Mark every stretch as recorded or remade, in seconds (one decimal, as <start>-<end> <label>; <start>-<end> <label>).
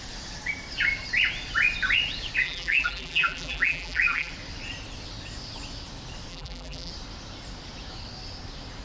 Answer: 0.0-2.4 recorded; 2.4-4.3 remade; 4.3-6.3 recorded; 6.3-6.9 remade; 6.9-8.8 recorded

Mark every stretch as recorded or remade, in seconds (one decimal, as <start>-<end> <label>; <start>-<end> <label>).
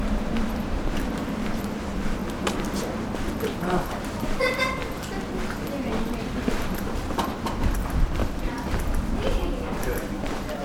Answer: 0.0-2.2 remade; 2.2-3.5 recorded; 3.5-4.8 remade; 4.8-5.9 recorded; 5.9-10.6 remade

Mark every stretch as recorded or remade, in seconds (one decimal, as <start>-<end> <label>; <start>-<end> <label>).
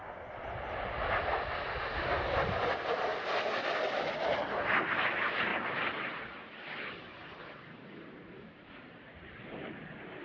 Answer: 0.0-10.2 recorded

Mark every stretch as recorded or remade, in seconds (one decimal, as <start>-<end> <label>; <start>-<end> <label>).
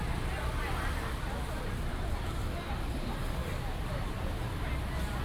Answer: 0.0-1.9 recorded; 1.9-2.4 remade; 2.4-5.2 recorded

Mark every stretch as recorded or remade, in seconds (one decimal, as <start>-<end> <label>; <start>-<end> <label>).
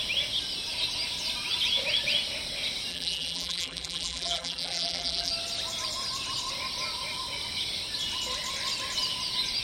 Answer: 0.0-2.9 recorded; 2.9-5.3 remade; 5.3-9.6 recorded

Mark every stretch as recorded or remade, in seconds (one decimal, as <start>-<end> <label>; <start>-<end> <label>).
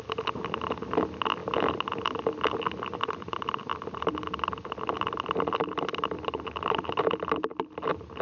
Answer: 0.0-8.2 recorded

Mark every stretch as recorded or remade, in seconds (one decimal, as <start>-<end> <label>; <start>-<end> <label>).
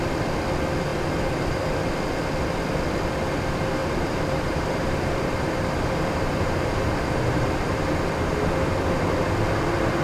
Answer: 0.0-0.9 recorded; 0.9-1.9 remade; 1.9-3.8 recorded; 3.8-7.5 remade; 7.5-10.0 recorded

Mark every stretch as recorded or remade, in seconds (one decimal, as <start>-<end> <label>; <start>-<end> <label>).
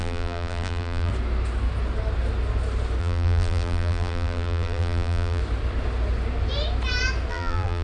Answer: 0.0-1.1 remade; 1.1-3.0 recorded; 3.0-5.4 remade; 5.4-7.3 recorded; 7.3-7.8 remade